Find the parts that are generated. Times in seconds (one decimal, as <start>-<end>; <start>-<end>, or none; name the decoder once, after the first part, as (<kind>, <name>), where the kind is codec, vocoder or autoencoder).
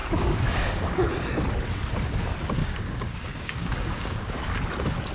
0.0-1.1 (codec, DAC); 2.6-4.6